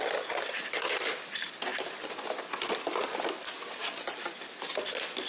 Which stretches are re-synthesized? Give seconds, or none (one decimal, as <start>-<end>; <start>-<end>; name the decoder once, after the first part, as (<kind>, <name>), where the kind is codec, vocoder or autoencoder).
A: none

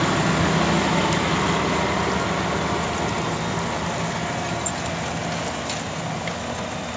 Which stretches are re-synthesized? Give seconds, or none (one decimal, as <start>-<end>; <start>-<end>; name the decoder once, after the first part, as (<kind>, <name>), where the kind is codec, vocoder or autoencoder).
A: none

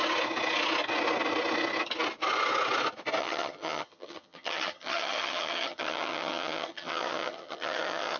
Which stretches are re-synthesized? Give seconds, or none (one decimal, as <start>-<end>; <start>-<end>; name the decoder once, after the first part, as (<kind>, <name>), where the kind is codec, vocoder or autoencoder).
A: 3.2-8.2 (vocoder, HiFi-GAN)

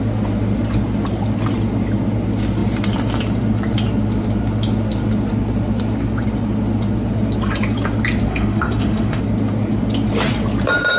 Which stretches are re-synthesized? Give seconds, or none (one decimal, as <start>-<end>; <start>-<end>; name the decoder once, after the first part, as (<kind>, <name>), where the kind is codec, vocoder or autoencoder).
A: 8.3-9.2 (autoencoder, DAC-VAE)

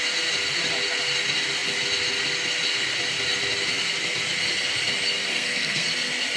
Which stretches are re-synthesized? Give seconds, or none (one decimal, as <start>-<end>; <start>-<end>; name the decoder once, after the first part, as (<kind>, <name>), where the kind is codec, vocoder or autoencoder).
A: 5.3-5.9 (codec, SNAC)

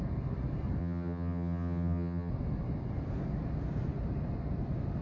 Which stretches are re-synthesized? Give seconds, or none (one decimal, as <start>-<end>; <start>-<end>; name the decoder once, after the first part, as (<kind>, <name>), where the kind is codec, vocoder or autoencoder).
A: 0.8-2.3 (vocoder, HiFi-GAN)

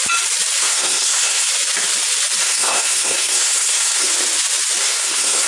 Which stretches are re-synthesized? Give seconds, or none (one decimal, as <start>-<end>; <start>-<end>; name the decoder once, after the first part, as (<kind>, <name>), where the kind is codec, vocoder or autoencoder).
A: 0.6-1.5 (codec, SNAC); 2.4-4.1; 4.8-5.5